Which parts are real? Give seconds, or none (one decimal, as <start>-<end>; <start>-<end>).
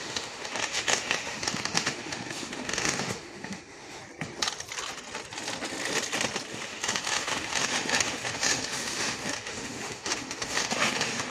4.0-6.5